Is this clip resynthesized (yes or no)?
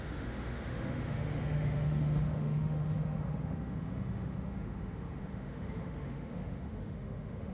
yes